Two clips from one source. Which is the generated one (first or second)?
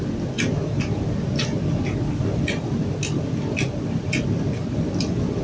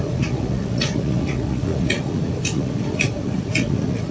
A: second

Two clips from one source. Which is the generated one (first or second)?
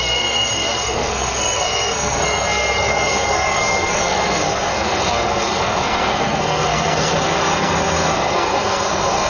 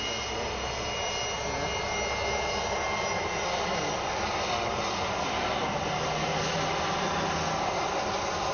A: first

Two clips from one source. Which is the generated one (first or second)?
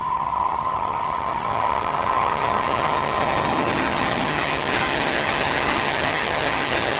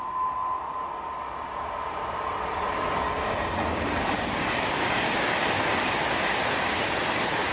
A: first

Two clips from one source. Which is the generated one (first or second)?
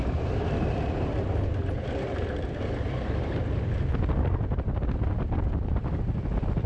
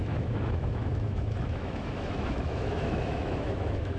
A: second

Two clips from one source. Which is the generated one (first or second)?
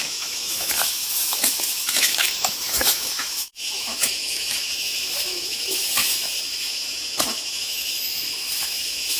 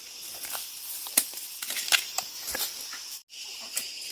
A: first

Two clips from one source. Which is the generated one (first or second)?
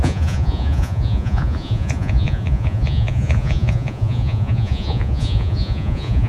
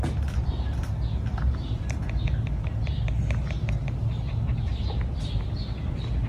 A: first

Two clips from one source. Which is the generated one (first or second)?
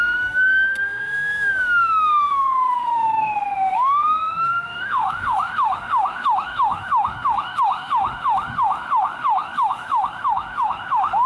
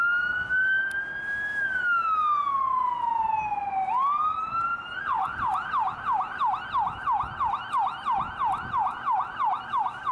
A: first